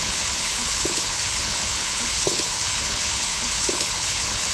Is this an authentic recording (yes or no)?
no